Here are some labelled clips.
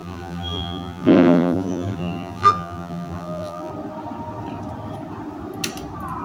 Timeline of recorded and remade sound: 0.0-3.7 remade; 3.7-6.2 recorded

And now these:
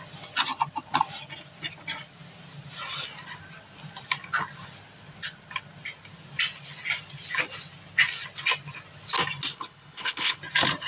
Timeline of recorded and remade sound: 0.0-9.5 recorded; 9.5-10.4 remade; 10.4-10.9 recorded

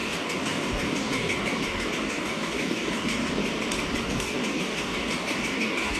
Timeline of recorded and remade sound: 0.0-3.4 remade; 3.4-4.0 recorded; 4.0-6.0 remade

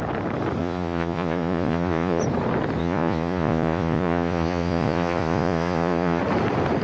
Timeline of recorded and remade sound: 0.0-0.6 recorded; 0.6-2.2 remade; 2.2-2.8 recorded; 2.8-6.2 remade; 6.2-6.8 recorded

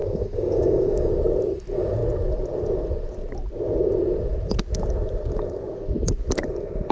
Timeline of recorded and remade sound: 0.0-1.1 remade; 1.1-6.9 recorded

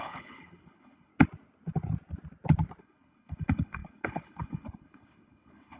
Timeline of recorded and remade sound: 0.0-1.1 remade; 1.1-2.8 recorded; 2.8-5.8 remade

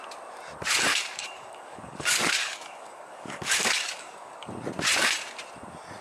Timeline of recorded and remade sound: 0.0-0.9 recorded; 0.9-4.5 remade; 4.5-6.0 recorded